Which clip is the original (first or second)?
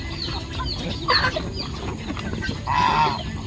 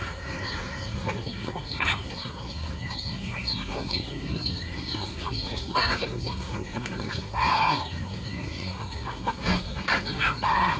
first